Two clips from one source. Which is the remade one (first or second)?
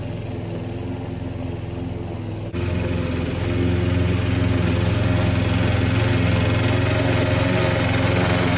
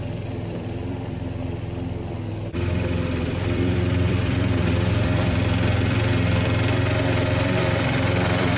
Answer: second